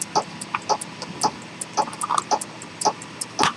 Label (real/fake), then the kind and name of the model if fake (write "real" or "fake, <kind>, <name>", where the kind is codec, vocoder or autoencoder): real